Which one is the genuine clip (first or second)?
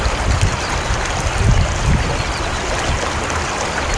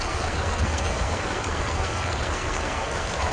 first